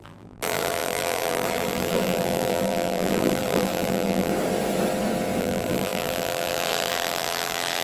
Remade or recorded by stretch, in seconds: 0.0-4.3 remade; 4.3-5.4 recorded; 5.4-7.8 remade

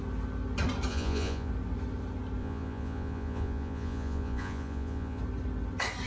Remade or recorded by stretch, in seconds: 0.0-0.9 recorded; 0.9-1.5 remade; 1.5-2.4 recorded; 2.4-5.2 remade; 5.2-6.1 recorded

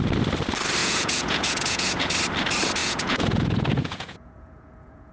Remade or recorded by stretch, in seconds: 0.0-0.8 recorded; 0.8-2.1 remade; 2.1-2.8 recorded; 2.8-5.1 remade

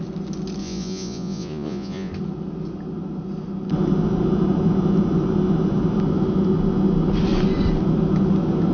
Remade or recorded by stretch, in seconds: 0.0-0.6 recorded; 0.6-2.1 remade; 2.1-8.7 recorded

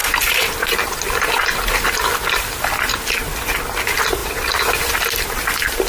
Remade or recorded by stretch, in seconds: 0.0-5.9 recorded

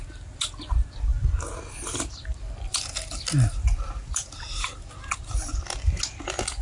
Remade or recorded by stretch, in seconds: 0.0-6.6 recorded